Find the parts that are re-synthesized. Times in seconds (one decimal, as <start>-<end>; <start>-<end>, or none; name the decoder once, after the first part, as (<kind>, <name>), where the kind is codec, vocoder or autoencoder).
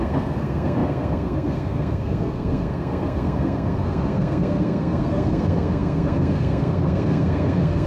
0.0-7.9 (codec, SNAC)